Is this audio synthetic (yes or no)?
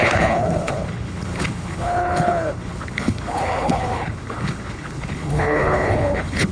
yes